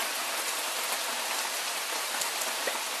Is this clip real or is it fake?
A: real